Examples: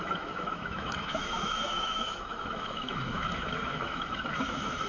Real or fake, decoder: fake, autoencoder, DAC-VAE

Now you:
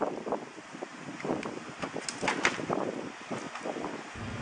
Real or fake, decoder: real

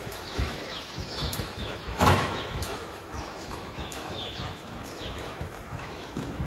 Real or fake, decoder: fake, autoencoder, DAC-VAE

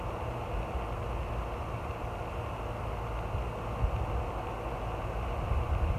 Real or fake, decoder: real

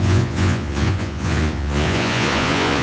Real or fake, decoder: fake, vocoder, Vocos